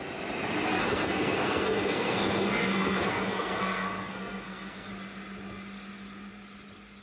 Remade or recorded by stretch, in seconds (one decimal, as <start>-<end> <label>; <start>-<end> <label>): 0.0-0.7 recorded; 0.7-4.9 remade; 4.9-7.0 recorded